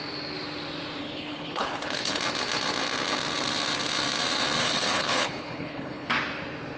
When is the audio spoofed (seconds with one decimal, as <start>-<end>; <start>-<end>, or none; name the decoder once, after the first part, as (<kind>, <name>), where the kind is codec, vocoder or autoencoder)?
1.0-2.2 (codec, HILCodec); 4.6-6.1